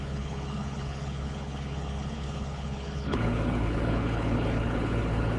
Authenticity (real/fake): fake